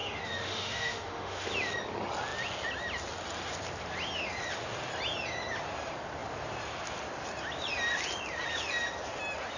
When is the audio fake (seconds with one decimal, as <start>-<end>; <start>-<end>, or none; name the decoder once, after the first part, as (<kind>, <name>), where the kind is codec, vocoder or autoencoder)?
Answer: 0.0-1.5 (autoencoder, DAC-VAE)